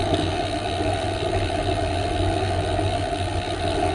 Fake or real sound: real